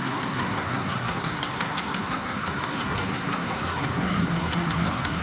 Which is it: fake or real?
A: fake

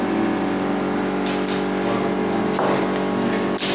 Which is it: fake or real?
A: real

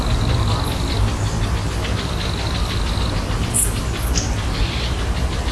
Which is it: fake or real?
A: real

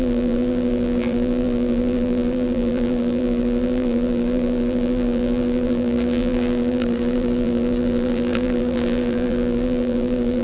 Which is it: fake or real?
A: fake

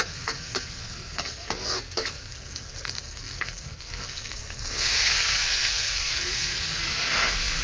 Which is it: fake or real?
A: fake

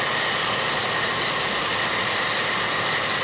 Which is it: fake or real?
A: real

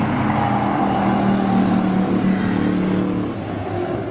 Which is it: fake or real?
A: real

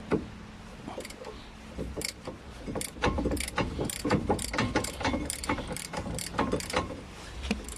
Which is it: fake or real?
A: fake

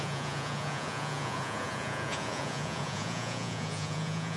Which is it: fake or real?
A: fake